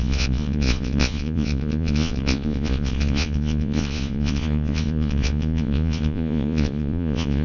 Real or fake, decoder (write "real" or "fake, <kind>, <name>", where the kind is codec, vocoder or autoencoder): fake, vocoder, Vocos